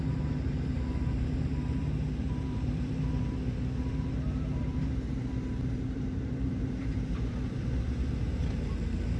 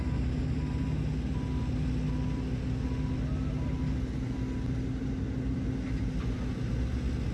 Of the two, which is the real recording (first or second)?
second